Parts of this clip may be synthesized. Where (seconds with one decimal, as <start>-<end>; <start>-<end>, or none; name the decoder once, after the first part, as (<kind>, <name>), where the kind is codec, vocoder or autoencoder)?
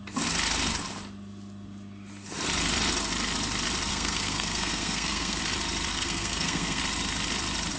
3.9-5.4 (codec, SNAC); 5.9-6.8